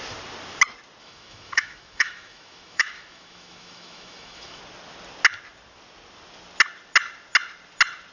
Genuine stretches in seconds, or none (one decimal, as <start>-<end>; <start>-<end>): 0.0-1.0; 4.6-8.1